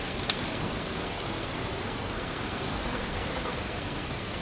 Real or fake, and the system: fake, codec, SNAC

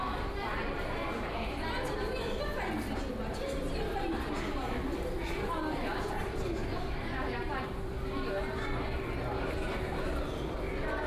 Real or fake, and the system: real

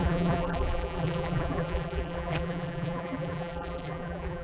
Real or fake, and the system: fake, vocoder, BigVGAN v2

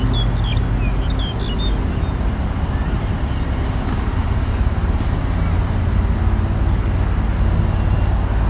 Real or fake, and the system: real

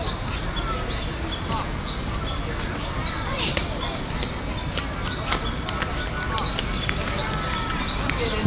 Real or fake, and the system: real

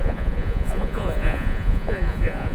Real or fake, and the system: fake, vocoder, Vocos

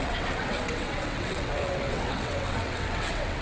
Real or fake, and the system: fake, vocoder, WaveNeXt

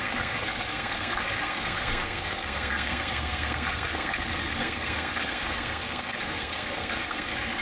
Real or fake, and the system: fake, codec, SNAC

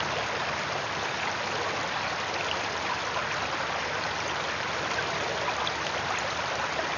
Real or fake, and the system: real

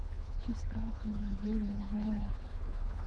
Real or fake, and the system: fake, codec, HILCodec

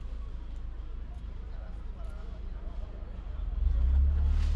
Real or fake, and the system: real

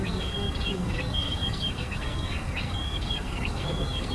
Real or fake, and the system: fake, codec, SNAC